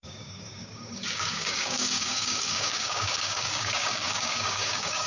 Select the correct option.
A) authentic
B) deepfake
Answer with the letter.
B